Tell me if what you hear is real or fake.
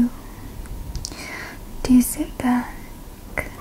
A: real